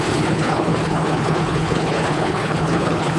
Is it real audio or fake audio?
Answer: fake